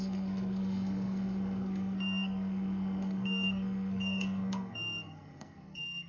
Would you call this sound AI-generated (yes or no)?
yes